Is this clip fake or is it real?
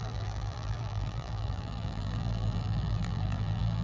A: fake